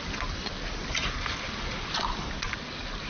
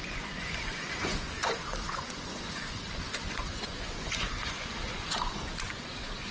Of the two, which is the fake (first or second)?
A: second